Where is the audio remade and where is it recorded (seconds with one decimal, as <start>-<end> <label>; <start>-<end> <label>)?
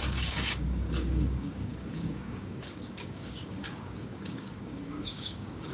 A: 0.0-5.7 remade